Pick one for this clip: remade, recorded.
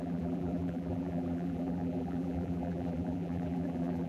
remade